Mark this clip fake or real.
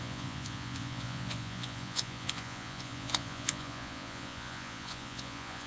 fake